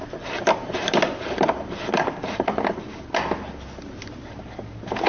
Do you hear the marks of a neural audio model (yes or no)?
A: no